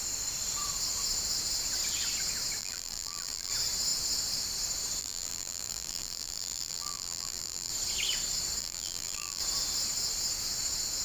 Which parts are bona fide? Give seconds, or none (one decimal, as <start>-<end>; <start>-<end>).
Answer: 0.0-2.6; 3.5-5.0; 7.7-8.6; 9.4-11.0

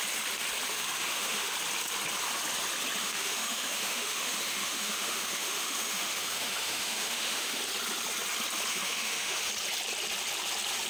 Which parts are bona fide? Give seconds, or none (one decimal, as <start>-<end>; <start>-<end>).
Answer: 0.0-0.7; 1.5-3.0; 7.6-8.7; 9.5-10.9